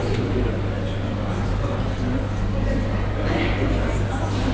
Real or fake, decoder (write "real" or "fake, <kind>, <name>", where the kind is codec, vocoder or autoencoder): real